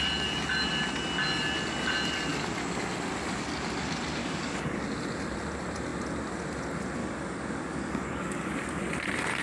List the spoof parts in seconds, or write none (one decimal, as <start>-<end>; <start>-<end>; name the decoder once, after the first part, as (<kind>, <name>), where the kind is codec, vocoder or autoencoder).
4.2-4.8 (codec, DAC); 7.0-8.8